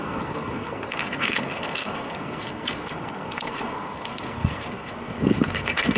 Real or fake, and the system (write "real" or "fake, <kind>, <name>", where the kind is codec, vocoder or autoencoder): fake, codec, SNAC